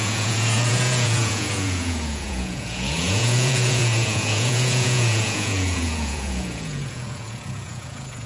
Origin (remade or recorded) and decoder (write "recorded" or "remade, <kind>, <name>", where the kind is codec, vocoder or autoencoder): remade, vocoder, Vocos